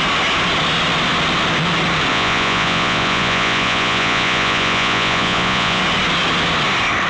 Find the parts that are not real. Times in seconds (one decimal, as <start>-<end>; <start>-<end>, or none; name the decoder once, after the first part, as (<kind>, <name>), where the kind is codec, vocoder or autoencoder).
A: 2.1-5.8 (vocoder, Vocos)